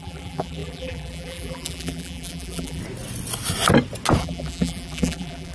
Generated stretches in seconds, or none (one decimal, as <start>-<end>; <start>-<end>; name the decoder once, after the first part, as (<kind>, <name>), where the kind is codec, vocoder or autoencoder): 0.0-2.8 (vocoder, BigVGAN v2); 4.2-5.5